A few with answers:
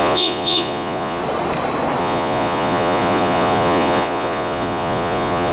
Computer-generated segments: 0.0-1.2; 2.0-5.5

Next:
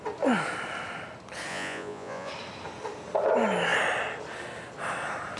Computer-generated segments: 1.5-2.3

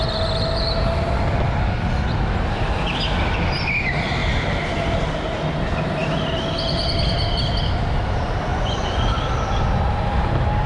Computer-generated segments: 8.5-9.2

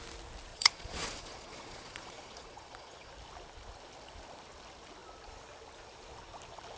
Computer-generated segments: 0.5-3.1

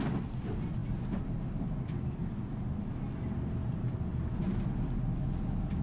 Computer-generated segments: none

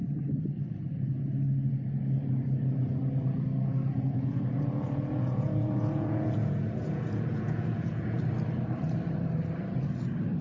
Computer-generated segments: 3.9-8.2